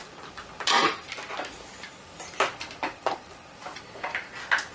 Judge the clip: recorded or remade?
recorded